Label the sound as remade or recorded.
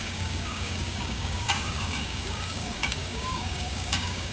remade